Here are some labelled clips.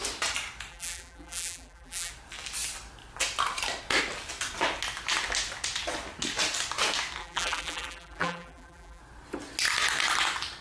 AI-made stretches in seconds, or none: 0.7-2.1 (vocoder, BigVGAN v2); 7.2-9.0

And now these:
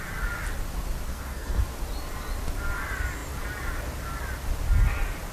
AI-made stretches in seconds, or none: 1.1-1.6 (codec, SNAC)